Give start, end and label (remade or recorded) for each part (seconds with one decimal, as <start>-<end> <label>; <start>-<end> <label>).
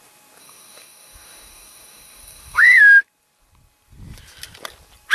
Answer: 0.0-0.4 recorded; 0.4-2.8 remade; 2.8-5.1 recorded